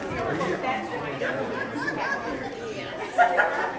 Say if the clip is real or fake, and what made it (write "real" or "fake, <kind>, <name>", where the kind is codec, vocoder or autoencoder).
real